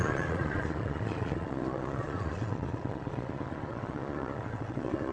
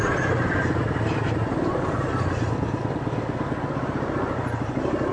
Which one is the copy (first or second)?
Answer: first